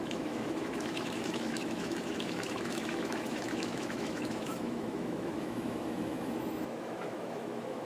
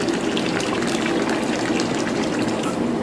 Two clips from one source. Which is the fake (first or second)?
first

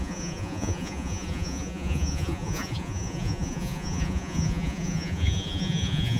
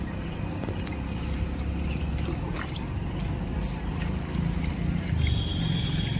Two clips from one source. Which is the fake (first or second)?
first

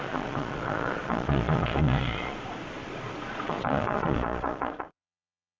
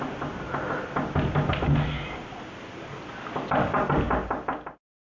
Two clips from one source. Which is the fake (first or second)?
first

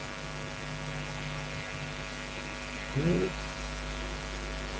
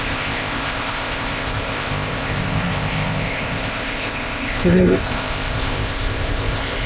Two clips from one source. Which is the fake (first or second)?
second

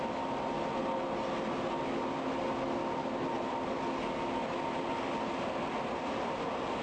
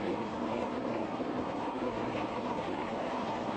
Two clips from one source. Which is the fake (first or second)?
second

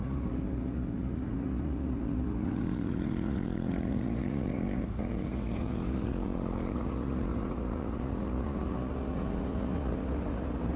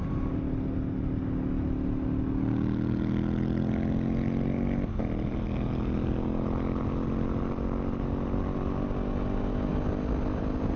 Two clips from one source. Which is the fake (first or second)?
first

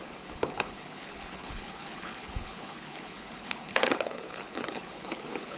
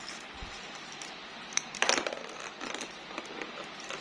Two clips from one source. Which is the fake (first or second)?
first